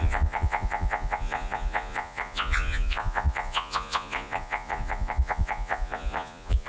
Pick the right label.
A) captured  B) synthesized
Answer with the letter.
B